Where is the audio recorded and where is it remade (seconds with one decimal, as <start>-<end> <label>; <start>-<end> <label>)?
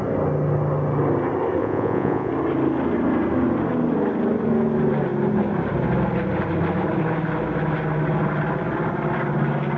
0.0-1.6 recorded; 1.6-2.3 remade; 2.3-9.8 recorded